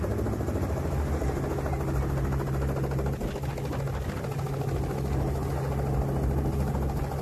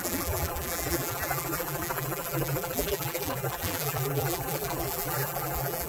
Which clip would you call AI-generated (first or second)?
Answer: second